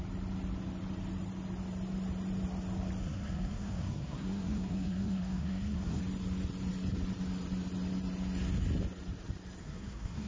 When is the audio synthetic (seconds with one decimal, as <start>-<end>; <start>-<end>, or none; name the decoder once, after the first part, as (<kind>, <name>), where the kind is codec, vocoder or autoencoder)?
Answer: 3.0-6.0 (codec, SNAC); 9.6-10.3

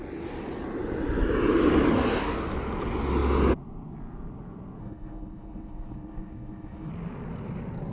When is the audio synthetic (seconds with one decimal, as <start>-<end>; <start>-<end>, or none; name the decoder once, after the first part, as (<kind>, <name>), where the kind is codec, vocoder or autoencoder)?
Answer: 4.8-6.9 (codec, SNAC)